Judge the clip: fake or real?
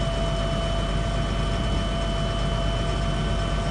real